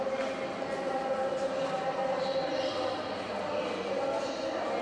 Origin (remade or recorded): recorded